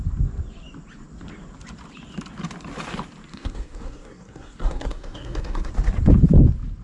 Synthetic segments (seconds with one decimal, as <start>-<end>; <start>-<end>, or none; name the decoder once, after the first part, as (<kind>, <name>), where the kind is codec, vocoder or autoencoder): 3.3-5.7 (codec, SNAC)